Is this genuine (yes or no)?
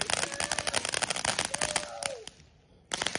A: yes